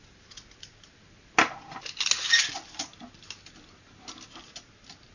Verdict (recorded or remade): recorded